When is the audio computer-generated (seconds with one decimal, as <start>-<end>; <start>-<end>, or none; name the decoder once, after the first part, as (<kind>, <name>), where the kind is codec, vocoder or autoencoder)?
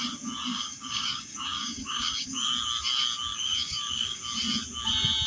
0.5-2.5 (codec, DAC); 3.3-4.2